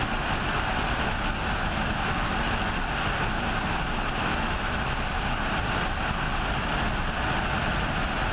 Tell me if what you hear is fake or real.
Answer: real